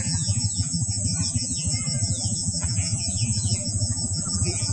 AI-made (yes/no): yes